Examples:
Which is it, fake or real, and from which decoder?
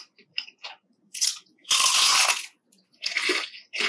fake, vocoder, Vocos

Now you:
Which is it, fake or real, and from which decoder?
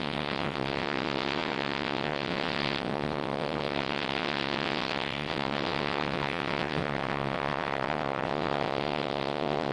fake, vocoder, WaveNeXt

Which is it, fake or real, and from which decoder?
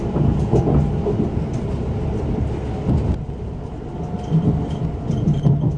real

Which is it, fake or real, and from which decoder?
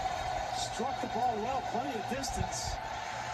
fake, vocoder, BigVGAN v2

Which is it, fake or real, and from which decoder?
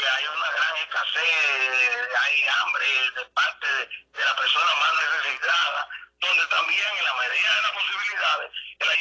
real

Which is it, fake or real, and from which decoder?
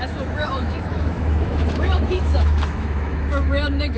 fake, autoencoder, DAC-VAE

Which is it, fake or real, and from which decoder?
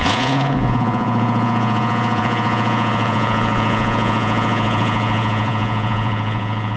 fake, vocoder, Vocos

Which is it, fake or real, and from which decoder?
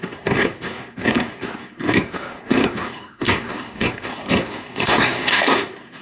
fake, codec, SNAC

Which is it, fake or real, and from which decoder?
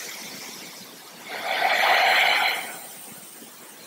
fake, vocoder, BigVGAN v2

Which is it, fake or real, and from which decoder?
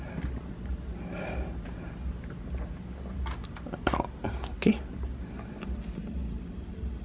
real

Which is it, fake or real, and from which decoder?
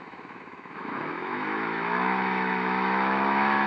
fake, autoencoder, DAC-VAE